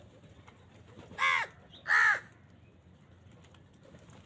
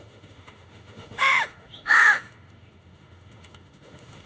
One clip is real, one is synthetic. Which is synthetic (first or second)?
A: second